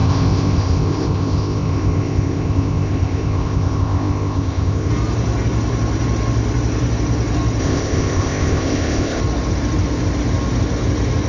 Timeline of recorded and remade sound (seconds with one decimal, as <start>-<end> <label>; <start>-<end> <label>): 0.0-4.9 remade; 4.9-7.6 recorded; 7.6-9.2 remade; 9.2-11.3 recorded